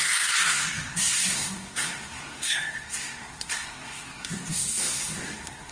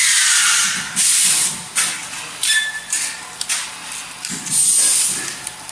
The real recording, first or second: second